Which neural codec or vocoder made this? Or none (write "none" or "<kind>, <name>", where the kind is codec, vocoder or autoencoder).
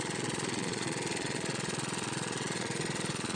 vocoder, Vocos